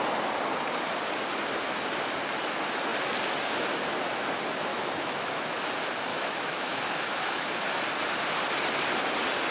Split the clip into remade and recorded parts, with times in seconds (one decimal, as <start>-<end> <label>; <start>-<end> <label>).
0.0-4.7 recorded; 4.7-5.4 remade; 5.4-6.1 recorded; 6.1-7.5 remade; 7.5-9.5 recorded